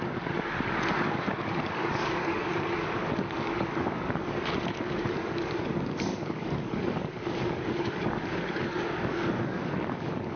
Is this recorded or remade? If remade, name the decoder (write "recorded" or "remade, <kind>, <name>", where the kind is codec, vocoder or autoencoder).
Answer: remade, codec, DAC